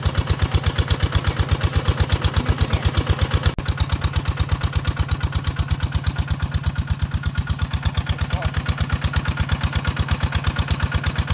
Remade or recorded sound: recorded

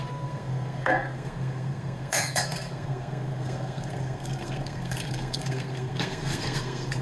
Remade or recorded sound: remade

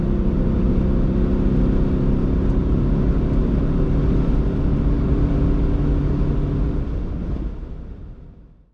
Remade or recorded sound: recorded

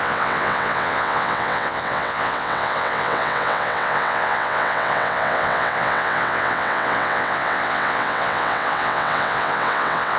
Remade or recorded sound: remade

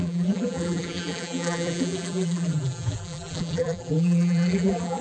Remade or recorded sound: remade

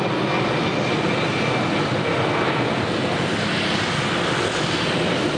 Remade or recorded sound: recorded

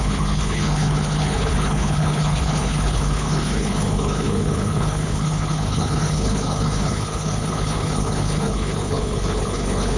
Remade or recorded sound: remade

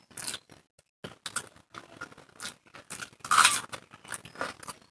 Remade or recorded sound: recorded